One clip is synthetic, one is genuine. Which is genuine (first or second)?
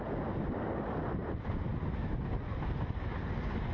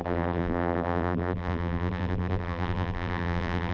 first